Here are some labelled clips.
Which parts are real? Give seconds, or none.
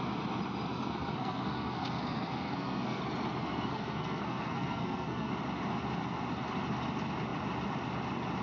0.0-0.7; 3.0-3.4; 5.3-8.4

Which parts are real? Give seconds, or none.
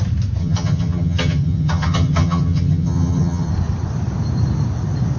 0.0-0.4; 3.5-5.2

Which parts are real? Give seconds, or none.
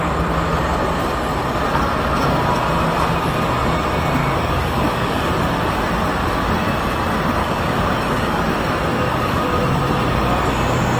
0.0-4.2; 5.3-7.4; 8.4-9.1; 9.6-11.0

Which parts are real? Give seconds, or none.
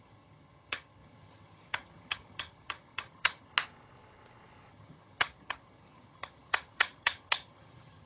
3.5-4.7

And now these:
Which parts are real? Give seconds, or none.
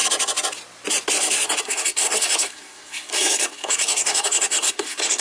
0.0-1.6